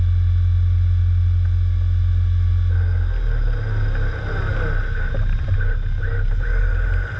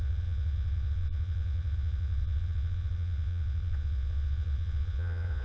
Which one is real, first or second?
first